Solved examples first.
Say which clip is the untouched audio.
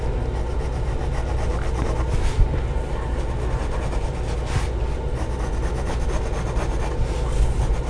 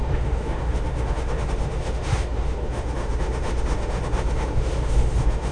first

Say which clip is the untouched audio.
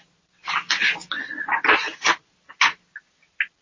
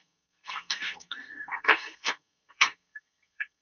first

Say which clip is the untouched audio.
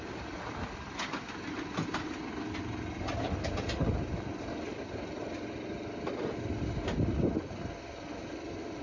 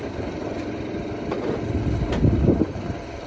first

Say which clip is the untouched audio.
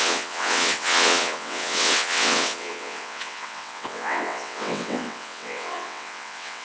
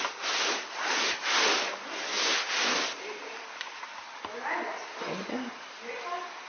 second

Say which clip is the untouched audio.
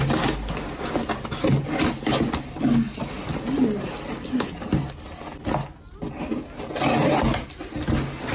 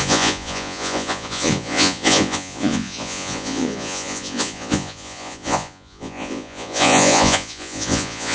first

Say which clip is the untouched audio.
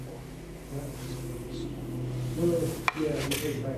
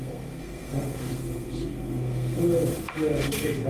first